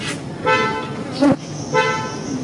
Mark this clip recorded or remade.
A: recorded